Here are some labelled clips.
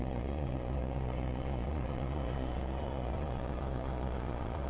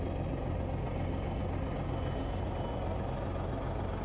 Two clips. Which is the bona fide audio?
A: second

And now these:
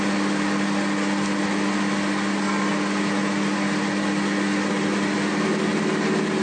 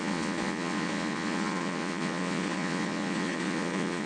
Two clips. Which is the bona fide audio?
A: first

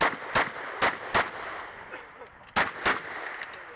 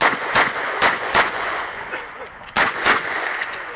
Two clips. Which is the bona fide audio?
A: first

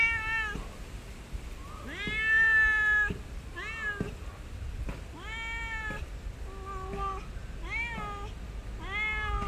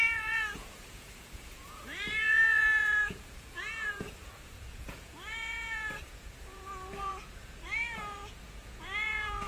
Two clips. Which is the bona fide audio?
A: first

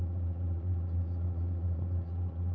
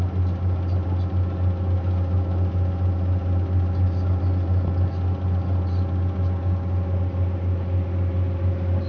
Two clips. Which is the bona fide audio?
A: second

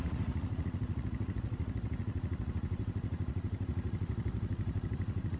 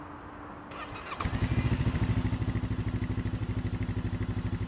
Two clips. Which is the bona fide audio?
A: second